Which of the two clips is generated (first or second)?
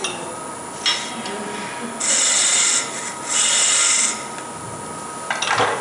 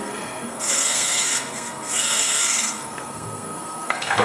second